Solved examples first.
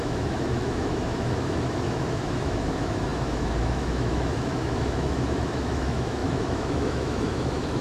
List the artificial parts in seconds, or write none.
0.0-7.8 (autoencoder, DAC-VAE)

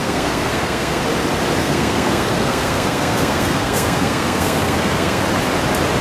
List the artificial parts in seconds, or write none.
0.0-1.0 (codec, SNAC); 1.6-5.2

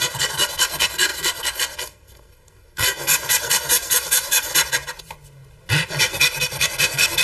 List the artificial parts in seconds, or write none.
0.0-4.5 (codec, SNAC); 6.0-7.2

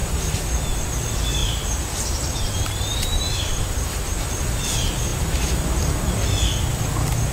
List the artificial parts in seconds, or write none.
0.0-0.9 (vocoder, BigVGAN v2); 1.4-4.2

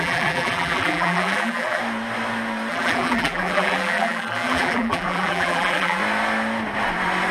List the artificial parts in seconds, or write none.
0.0-1.8 (vocoder, BigVGAN v2); 2.7-6.0